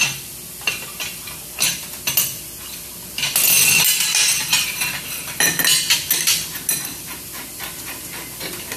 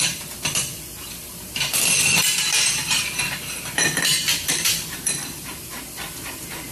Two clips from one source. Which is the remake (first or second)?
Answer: second